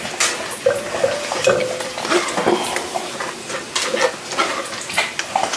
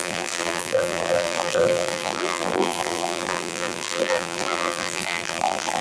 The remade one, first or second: second